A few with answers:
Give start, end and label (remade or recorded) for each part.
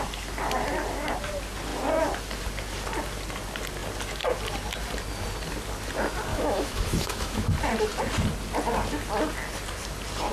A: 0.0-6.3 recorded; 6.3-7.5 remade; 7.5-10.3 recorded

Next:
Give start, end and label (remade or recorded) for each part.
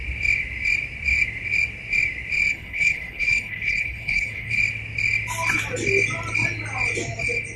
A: 0.0-2.5 recorded; 2.5-4.6 remade; 4.6-7.6 recorded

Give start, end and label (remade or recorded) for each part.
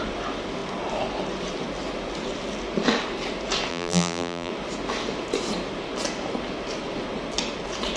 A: 0.0-3.7 recorded; 3.7-4.5 remade; 4.5-8.0 recorded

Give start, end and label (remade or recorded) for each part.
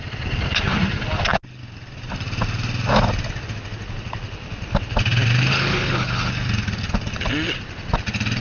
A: 0.0-5.5 recorded; 5.5-6.3 remade; 6.3-8.4 recorded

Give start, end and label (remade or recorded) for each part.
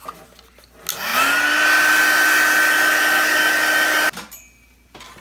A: 0.0-5.2 recorded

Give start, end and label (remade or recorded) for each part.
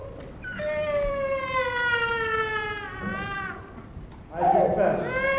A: 0.0-5.4 recorded